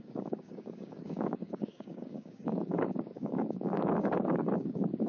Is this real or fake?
fake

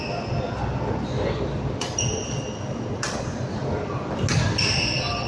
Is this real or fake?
real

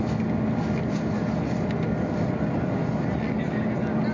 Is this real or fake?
real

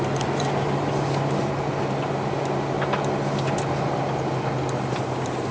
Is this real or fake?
real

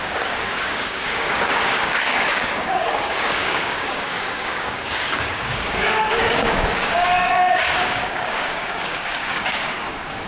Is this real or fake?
fake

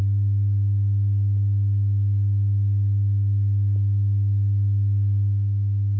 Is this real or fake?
real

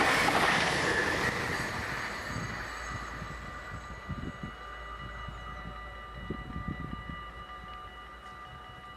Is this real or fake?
real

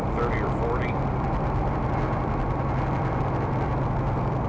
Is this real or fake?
real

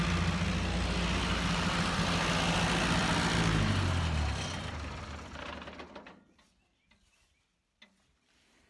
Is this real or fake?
real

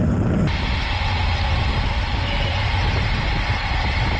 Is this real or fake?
real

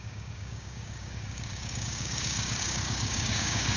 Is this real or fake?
fake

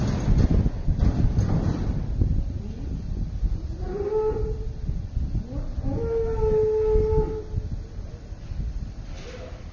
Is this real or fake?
real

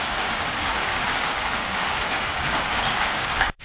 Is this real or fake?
fake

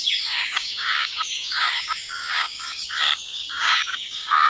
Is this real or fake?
fake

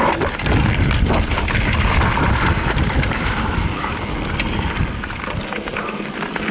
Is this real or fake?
real